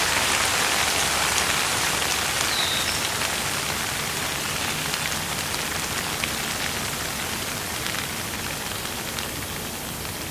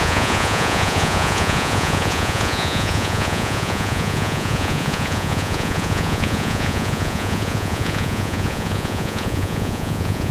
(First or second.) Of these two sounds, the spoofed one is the second